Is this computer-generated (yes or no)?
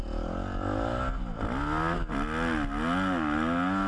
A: no